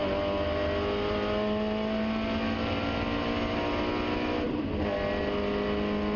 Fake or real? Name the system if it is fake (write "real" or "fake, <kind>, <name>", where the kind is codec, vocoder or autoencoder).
real